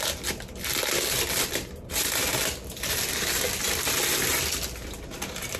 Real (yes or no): yes